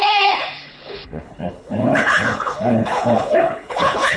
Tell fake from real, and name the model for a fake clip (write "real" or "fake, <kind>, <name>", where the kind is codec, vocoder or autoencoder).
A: fake, codec, HILCodec